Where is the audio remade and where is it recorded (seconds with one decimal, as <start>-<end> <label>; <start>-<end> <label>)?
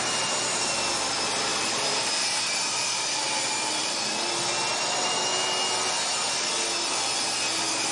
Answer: 0.0-1.5 recorded; 1.5-4.3 remade; 4.3-7.9 recorded